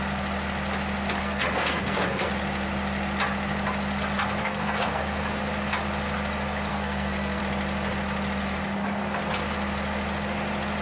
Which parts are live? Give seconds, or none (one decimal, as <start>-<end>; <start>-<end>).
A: 0.0-1.2; 2.3-4.4; 5.2-6.7; 7.4-10.8